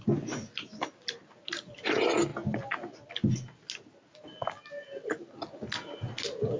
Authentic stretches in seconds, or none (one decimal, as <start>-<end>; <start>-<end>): 0.0-6.6